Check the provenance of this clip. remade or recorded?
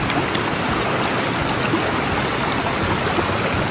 recorded